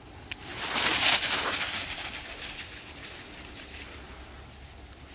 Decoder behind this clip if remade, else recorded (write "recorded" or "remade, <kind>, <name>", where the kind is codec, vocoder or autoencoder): recorded